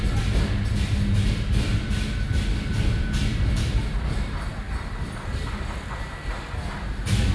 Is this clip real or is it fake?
real